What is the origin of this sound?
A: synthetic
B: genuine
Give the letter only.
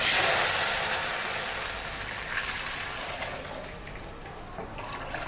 B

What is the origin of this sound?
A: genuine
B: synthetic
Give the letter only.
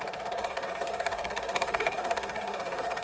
B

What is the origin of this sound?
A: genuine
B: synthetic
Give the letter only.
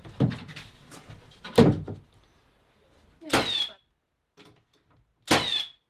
A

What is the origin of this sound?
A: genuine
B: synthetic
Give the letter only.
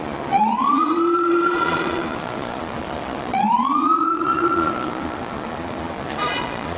B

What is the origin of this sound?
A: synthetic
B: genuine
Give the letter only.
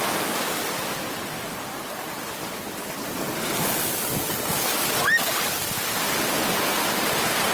B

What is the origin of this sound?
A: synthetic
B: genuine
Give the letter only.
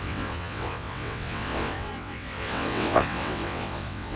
A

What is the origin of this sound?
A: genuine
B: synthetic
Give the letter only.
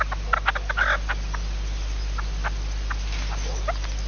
A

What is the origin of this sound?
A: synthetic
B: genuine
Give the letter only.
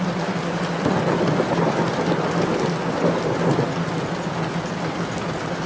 B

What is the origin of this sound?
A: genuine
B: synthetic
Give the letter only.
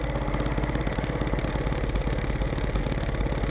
A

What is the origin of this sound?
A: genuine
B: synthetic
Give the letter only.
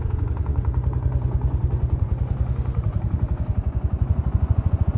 B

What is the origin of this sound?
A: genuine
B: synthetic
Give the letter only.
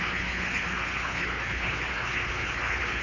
B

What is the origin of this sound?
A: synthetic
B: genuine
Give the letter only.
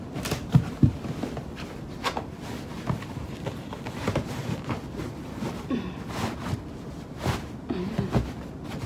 B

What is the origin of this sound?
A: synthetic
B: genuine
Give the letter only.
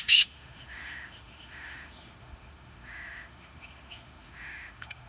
A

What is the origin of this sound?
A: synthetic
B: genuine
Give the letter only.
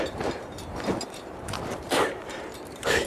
A